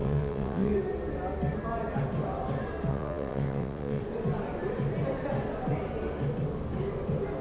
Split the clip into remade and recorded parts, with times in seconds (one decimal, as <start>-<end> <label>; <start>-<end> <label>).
0.0-0.7 remade; 0.7-2.9 recorded; 2.9-4.0 remade; 4.0-7.4 recorded